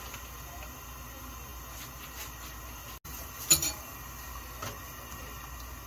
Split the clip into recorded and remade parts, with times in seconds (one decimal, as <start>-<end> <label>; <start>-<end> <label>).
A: 0.0-5.9 recorded